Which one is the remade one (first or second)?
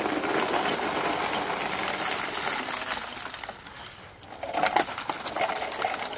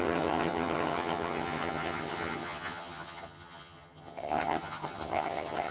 second